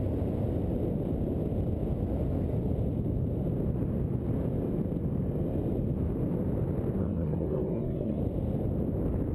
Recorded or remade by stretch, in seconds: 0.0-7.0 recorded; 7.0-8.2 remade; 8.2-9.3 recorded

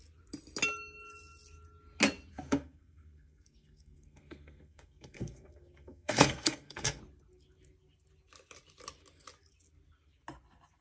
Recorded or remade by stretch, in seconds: 0.0-2.3 recorded; 2.3-7.0 remade; 7.0-10.8 recorded

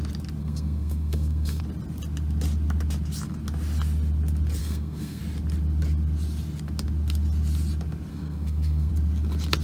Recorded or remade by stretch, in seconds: 0.0-0.4 recorded; 0.4-1.6 remade; 1.6-4.6 recorded; 4.6-5.2 remade; 5.2-8.1 recorded; 8.1-8.9 remade; 8.9-9.6 recorded

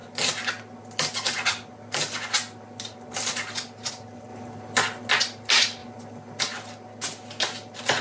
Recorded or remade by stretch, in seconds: 0.0-8.0 recorded

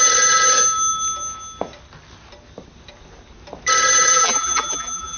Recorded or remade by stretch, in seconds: 0.0-4.1 recorded; 4.1-5.2 remade